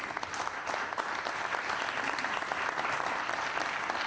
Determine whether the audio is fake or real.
real